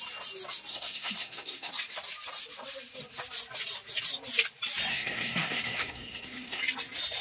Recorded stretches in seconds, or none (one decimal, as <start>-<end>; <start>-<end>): 0.0-0.7; 1.7-4.9; 6.6-7.2